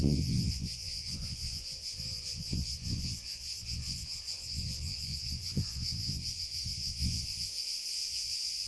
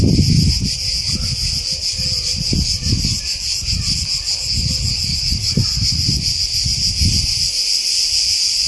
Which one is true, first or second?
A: second